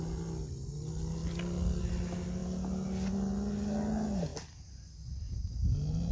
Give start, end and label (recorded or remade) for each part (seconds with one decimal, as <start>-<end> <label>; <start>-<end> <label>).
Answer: 0.0-6.1 recorded